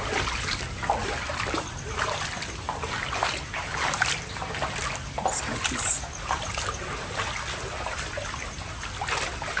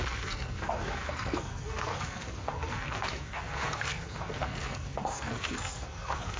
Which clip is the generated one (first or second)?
second